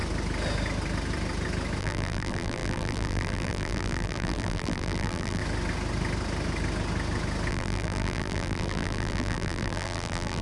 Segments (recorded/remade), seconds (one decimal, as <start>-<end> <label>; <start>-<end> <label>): 0.0-1.8 recorded; 1.8-5.4 remade; 5.4-7.5 recorded; 7.5-10.4 remade